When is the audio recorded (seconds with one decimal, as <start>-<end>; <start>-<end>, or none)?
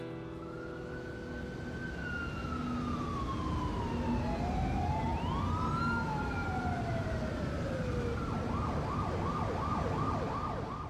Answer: 0.0-6.4; 7.8-10.9